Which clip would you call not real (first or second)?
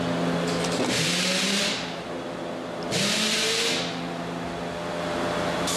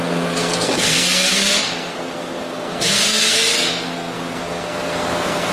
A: second